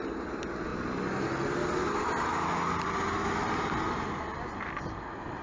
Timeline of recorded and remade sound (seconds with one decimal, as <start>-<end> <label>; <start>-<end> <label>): 0.0-5.4 recorded